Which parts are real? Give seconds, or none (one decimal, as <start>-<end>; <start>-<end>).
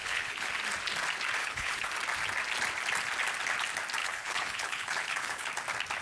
0.5-1.4; 1.9-4.0; 5.5-6.0